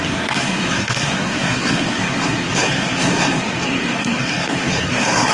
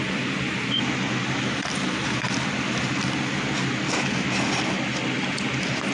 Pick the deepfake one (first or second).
first